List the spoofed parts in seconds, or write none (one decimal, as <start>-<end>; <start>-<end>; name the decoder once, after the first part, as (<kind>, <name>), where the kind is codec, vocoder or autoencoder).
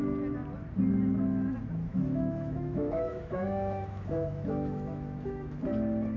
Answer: 1.9-5.6 (autoencoder, DAC-VAE)